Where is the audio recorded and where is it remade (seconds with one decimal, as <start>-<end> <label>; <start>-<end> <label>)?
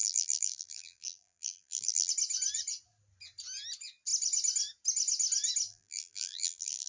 0.0-2.1 remade; 2.1-5.7 recorded; 5.7-6.9 remade